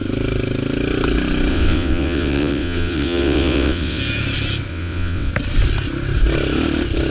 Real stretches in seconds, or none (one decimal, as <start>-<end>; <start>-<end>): 0.0-1.5; 4.0-4.7; 5.3-7.1